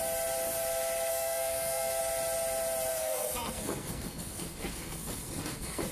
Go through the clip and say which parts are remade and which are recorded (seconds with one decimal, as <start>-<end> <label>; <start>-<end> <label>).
0.0-1.1 recorded; 1.1-2.0 remade; 2.0-2.9 recorded; 2.9-5.9 remade